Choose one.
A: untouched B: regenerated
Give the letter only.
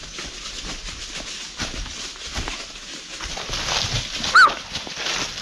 A